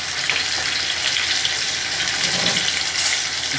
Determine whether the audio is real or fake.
real